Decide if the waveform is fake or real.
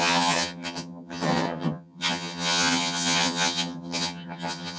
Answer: fake